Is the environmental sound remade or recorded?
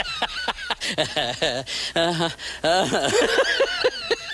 recorded